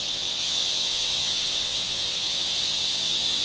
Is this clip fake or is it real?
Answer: fake